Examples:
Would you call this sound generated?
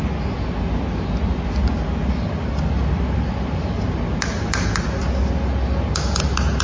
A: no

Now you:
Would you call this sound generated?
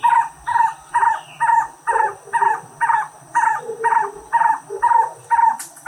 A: no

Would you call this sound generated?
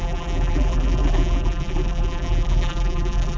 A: yes